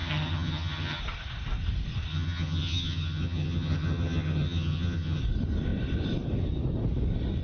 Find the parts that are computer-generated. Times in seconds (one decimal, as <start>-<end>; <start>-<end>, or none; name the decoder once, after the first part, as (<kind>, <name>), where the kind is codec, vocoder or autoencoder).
0.0-1.0 (vocoder, HiFi-GAN); 2.1-5.2